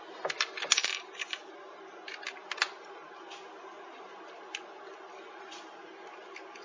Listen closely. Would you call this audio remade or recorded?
recorded